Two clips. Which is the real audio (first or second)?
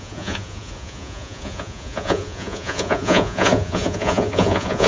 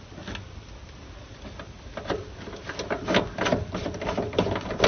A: second